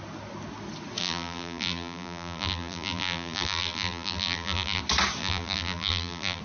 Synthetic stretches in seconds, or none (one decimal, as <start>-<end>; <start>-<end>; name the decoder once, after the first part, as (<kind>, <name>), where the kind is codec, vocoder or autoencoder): 1.0-4.8 (vocoder, BigVGAN v2); 5.2-6.4